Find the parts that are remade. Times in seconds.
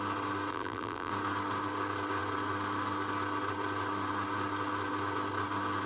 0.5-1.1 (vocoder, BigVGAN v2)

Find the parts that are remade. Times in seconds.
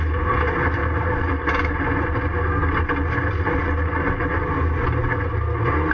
none